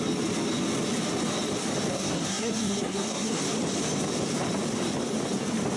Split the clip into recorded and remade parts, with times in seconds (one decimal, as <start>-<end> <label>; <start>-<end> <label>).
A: 0.0-1.9 recorded; 1.9-3.4 remade; 3.4-5.8 recorded